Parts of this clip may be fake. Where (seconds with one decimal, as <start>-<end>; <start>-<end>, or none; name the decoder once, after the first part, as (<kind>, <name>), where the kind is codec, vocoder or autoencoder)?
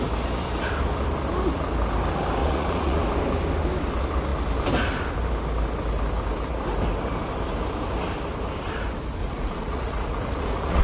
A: 2.4-3.0 (vocoder, Vocos); 9.2-10.8